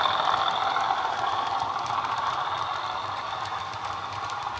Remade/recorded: recorded